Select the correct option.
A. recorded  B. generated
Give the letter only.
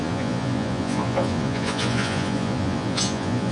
B